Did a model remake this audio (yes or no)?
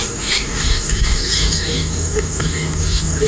yes